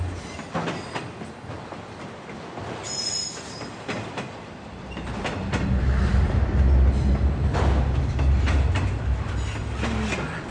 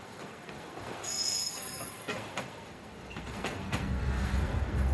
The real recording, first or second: first